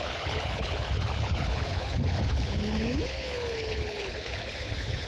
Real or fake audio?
fake